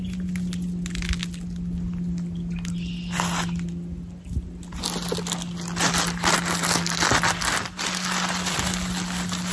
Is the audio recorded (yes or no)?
yes